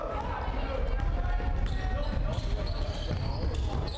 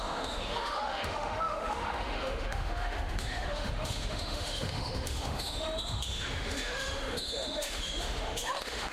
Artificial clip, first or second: second